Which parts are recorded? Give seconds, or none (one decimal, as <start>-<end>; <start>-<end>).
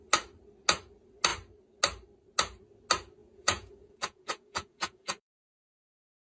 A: 0.0-3.2; 5.3-6.2